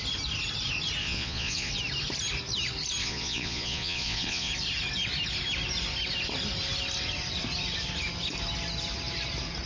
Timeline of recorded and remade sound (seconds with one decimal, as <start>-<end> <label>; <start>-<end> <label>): 0.0-1.0 recorded; 1.0-1.7 remade; 1.7-3.0 recorded; 3.0-4.5 remade; 4.5-9.7 recorded